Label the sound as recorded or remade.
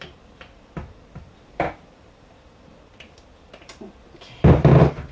remade